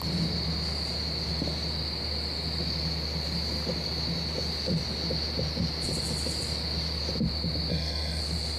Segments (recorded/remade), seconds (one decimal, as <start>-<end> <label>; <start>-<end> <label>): 0.0-7.7 recorded; 7.7-8.2 remade; 8.2-8.6 recorded